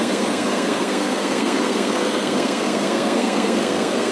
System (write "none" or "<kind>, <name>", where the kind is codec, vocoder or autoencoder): codec, SNAC